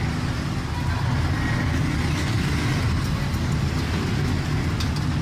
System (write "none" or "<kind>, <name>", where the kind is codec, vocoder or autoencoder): none